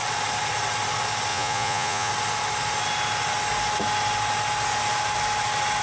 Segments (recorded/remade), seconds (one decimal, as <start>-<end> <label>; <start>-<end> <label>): 0.0-1.3 recorded; 1.3-2.1 remade; 2.1-5.8 recorded